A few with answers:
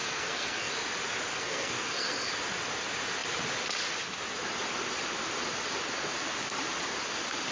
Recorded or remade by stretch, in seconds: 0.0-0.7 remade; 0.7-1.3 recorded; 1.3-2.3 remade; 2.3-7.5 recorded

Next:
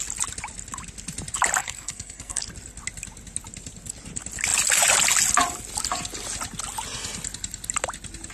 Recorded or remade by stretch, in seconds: 0.0-1.6 recorded; 1.6-2.4 remade; 2.4-8.3 recorded

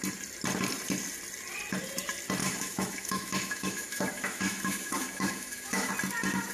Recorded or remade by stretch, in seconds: 0.0-2.4 recorded; 2.4-5.9 remade; 5.9-6.5 recorded

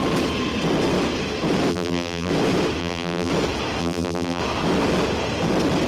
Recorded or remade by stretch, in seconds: 0.0-1.7 recorded; 1.7-2.3 remade; 2.3-2.8 recorded; 2.8-3.3 remade; 3.3-3.8 recorded; 3.8-4.4 remade; 4.4-5.9 recorded

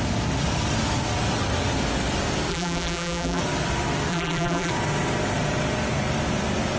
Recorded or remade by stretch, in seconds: 0.0-2.5 recorded; 2.5-3.4 remade; 3.4-4.1 recorded; 4.1-4.7 remade; 4.7-6.8 recorded